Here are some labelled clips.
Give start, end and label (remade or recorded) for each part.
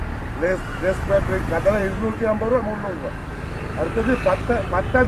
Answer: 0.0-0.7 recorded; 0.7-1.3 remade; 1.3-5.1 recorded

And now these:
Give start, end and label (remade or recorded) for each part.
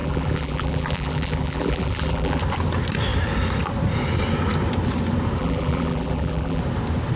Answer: 0.0-2.4 remade; 2.4-5.4 recorded; 5.4-6.6 remade; 6.6-7.2 recorded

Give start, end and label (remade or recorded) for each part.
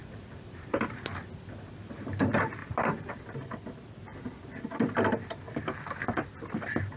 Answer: 0.0-2.2 remade; 2.2-2.6 recorded; 2.6-3.2 remade; 3.2-7.0 recorded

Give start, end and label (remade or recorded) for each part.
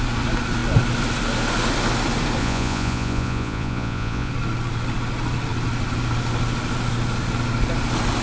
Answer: 0.0-2.4 recorded; 2.4-4.3 remade; 4.3-8.2 recorded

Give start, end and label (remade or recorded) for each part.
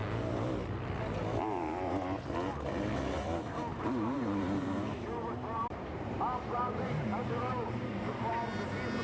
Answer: 0.0-3.7 recorded; 3.7-8.3 remade; 8.3-9.0 recorded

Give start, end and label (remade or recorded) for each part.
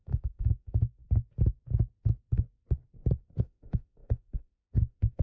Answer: 0.0-1.0 remade; 1.0-3.4 recorded; 3.4-5.2 remade